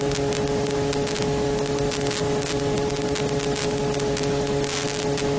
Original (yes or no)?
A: yes